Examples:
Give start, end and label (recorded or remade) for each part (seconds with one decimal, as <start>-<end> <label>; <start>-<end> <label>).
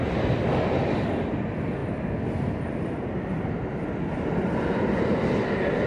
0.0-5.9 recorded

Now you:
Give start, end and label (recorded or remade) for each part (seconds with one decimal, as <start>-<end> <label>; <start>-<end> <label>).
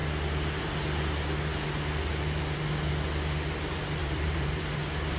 0.0-4.0 recorded; 4.0-4.6 remade; 4.6-5.2 recorded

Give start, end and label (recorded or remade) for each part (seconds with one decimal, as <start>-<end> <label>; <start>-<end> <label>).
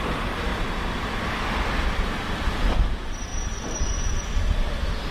0.0-0.5 recorded; 0.5-1.4 remade; 1.4-5.1 recorded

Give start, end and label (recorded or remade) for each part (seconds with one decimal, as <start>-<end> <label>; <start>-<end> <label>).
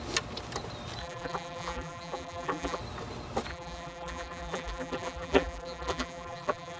0.0-1.0 recorded; 1.0-2.8 remade; 2.8-3.5 recorded; 3.5-6.8 remade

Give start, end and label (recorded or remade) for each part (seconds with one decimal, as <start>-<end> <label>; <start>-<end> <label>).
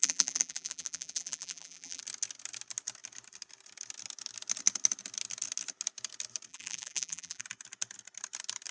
0.0-2.0 remade; 2.0-6.5 recorded; 6.5-7.4 remade; 7.4-8.7 recorded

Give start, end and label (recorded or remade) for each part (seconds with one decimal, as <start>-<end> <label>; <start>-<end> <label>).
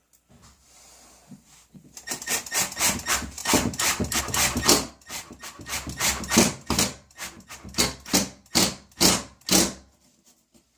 0.0-3.4 recorded; 3.4-4.2 remade; 4.2-10.8 recorded